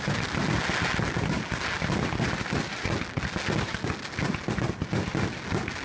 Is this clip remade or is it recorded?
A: recorded